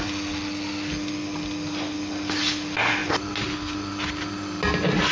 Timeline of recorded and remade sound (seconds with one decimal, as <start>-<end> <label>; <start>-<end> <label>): 0.0-5.1 recorded